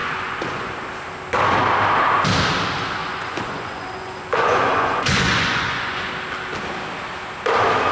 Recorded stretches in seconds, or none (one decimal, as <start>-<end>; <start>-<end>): 0.7-3.0; 6.1-7.9